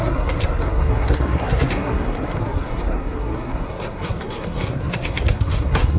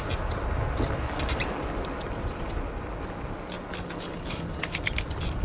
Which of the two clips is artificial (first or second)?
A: first